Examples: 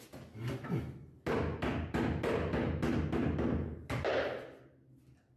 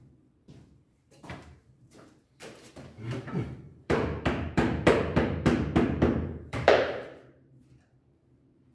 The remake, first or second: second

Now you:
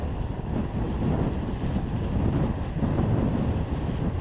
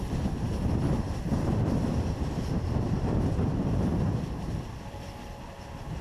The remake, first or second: second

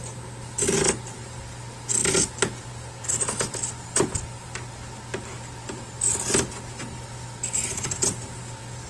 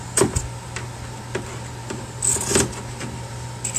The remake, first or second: first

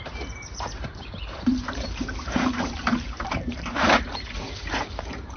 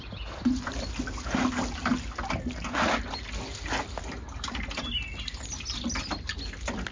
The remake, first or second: first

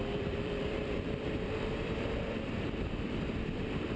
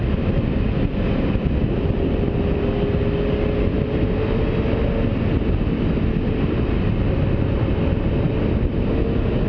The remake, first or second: first